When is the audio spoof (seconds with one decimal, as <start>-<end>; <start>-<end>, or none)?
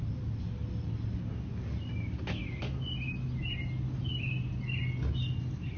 none